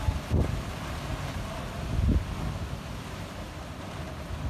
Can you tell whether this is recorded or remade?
recorded